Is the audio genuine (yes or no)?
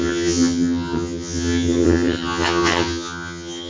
no